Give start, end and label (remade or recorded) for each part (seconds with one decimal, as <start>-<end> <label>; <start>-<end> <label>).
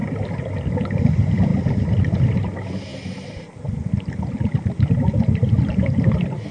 0.0-6.5 recorded